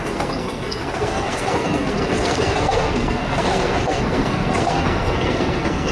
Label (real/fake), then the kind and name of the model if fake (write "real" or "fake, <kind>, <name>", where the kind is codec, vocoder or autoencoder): fake, codec, SNAC